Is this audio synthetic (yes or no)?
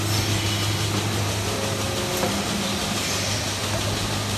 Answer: no